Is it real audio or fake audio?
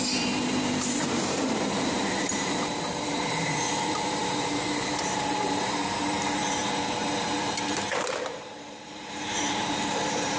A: fake